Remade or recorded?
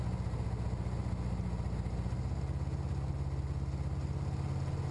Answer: recorded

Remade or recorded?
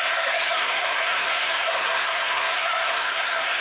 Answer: remade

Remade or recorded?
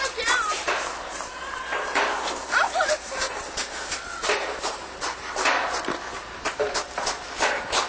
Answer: remade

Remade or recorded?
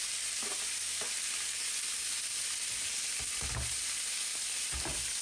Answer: recorded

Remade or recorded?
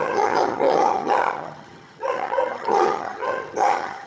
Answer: remade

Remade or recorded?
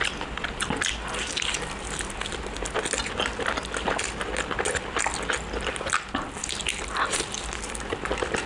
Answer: recorded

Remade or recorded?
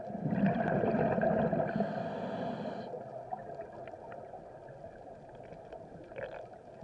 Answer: recorded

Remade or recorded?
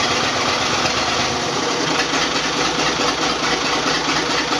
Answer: recorded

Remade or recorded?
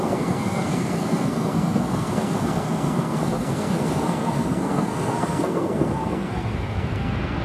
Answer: remade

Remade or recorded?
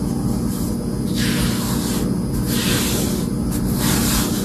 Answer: recorded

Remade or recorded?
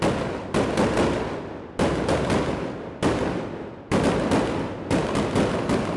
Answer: recorded